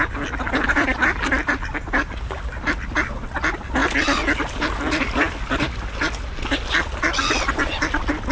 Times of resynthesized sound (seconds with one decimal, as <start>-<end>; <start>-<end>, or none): none